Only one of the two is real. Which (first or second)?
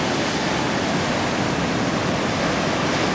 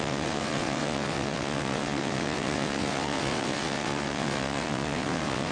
first